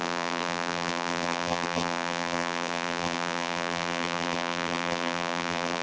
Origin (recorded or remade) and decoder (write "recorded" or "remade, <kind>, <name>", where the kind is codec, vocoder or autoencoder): remade, vocoder, BigVGAN v2